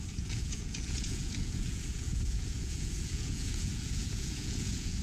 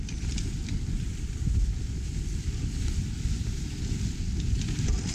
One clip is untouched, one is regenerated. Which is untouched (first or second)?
second